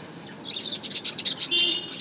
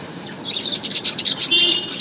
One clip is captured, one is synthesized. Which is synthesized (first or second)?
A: second